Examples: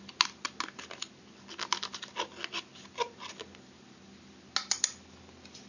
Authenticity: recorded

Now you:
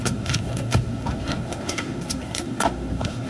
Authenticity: remade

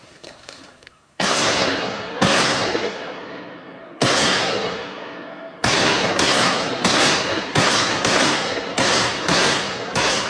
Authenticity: remade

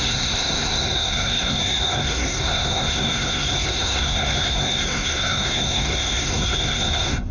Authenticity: remade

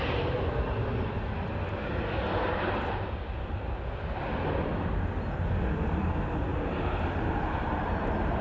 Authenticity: recorded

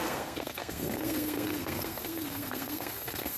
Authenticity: remade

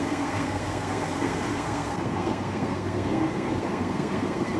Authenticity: remade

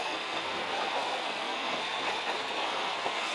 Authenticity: remade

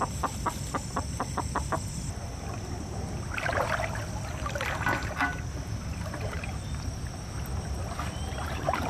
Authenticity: recorded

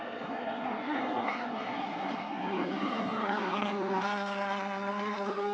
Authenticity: remade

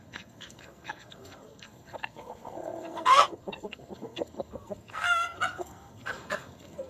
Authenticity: remade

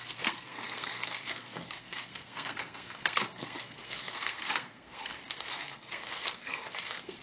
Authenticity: remade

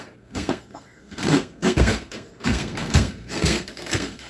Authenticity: remade